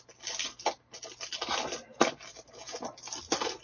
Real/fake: real